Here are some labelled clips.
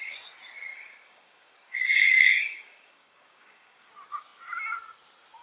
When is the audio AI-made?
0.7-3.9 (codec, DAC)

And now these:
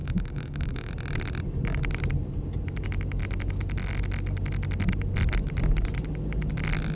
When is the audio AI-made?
0.0-0.9 (codec, DAC)

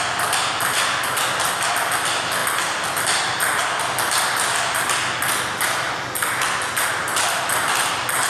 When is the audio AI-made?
none

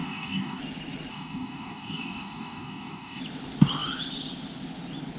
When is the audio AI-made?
0.0-0.6 (codec, DAC); 1.1-3.2

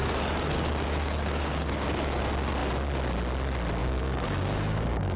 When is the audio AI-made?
0.0-2.2 (codec, DAC); 3.8-5.2

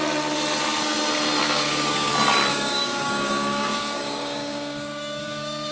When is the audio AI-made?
1.4-2.1 (codec, DAC); 2.5-5.7

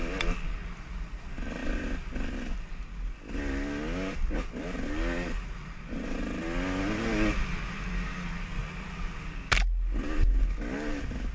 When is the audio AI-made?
none

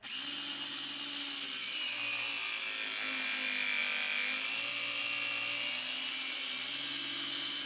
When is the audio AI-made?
none